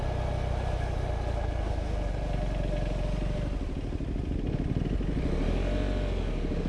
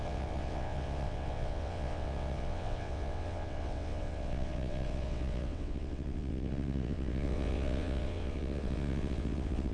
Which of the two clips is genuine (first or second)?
first